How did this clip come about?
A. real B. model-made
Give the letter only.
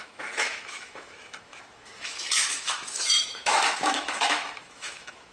B